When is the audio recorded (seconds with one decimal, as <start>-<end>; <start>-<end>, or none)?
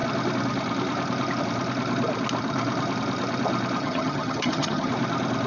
0.0-3.8; 4.9-5.5